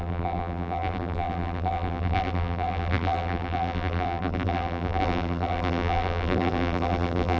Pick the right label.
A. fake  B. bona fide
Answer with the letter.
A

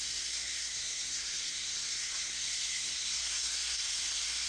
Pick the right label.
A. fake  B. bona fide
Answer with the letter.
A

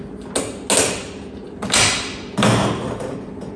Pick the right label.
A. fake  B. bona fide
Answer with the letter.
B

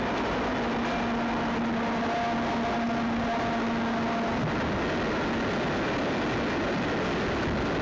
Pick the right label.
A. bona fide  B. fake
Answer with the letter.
A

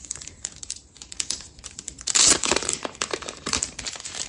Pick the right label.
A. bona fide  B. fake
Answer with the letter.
B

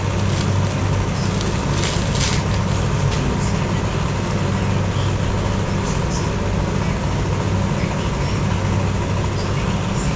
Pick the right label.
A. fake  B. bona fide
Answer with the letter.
B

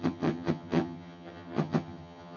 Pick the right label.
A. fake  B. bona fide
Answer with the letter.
A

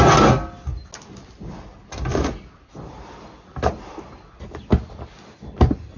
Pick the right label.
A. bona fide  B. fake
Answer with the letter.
A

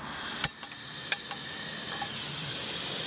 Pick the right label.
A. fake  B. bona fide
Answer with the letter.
B